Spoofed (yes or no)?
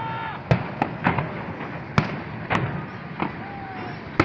no